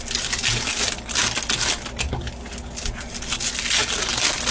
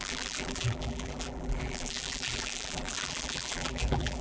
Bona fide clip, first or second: first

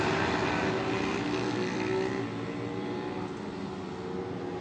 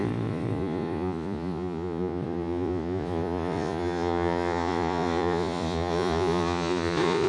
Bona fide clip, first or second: first